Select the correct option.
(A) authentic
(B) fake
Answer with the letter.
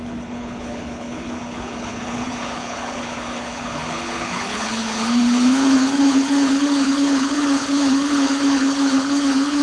B